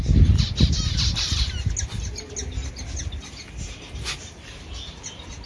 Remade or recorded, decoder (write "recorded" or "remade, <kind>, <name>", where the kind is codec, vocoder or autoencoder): recorded